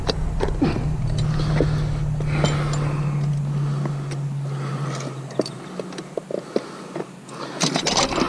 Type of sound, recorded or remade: recorded